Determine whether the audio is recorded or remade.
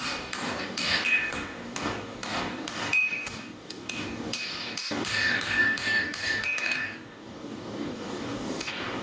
remade